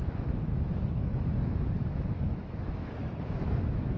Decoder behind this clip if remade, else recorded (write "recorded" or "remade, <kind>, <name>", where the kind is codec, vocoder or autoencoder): remade, autoencoder, DAC-VAE